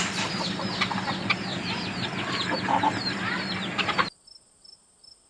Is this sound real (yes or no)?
yes